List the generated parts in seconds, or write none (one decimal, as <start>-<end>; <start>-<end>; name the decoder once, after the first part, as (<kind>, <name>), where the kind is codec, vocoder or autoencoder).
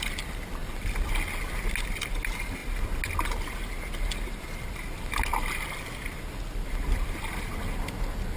none